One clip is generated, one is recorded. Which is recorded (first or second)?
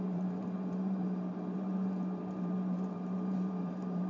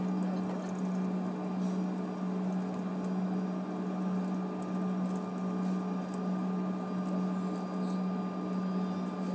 second